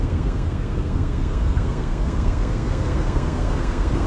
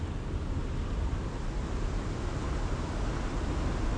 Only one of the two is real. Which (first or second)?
second